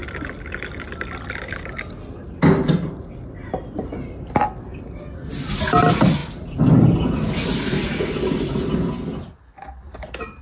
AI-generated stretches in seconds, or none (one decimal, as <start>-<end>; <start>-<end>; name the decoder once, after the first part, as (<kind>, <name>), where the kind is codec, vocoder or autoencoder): none